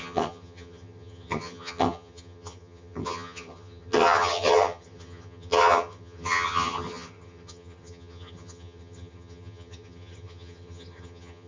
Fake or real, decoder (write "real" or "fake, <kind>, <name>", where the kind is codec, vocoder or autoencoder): fake, vocoder, HiFi-GAN